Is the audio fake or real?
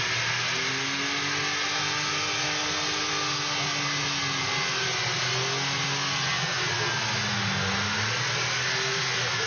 real